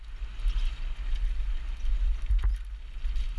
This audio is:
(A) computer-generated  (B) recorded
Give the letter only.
B